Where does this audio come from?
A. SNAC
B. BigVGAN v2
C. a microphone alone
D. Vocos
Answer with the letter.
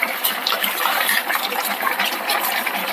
B